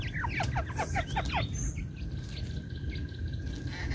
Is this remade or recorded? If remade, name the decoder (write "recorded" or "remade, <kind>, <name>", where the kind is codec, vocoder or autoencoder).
recorded